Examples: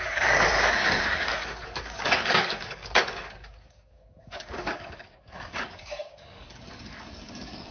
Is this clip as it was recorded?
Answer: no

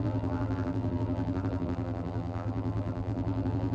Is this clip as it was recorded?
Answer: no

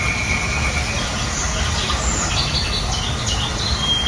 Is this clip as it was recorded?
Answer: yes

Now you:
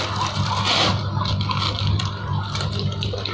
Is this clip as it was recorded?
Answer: yes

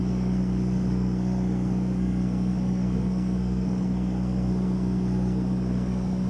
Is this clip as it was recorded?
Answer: no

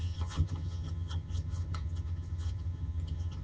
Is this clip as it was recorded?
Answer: no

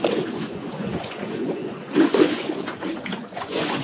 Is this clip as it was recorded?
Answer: no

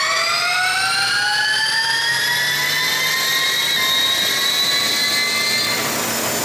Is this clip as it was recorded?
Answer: yes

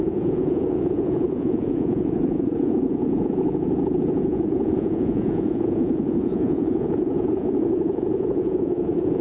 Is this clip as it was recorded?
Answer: no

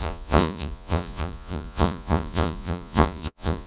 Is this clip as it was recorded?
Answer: no